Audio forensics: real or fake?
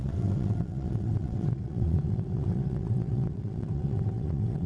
fake